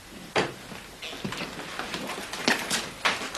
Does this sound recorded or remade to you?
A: recorded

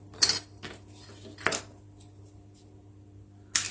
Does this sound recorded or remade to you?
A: recorded